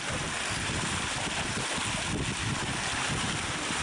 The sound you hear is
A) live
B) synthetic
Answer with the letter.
A